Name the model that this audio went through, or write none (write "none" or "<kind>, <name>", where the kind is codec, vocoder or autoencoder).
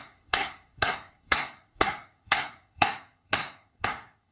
codec, SNAC